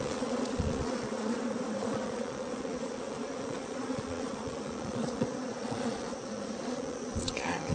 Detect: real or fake fake